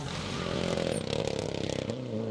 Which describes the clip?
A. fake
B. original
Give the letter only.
B